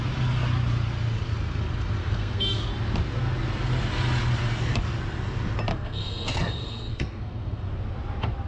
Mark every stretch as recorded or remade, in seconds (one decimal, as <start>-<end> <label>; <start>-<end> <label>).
0.0-2.0 recorded; 2.0-2.7 remade; 2.7-5.7 recorded; 5.7-7.7 remade; 7.7-8.5 recorded